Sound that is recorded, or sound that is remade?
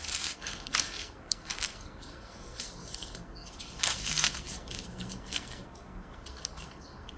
remade